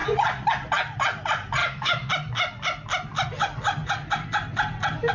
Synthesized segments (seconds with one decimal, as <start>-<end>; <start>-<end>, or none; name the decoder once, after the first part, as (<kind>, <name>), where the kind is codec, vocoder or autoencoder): 1.6-2.1 (autoencoder, DAC-VAE)